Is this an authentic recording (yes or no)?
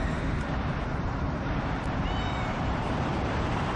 no